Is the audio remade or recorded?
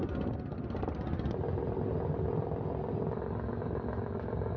recorded